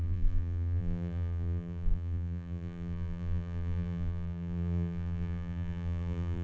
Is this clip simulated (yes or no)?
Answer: yes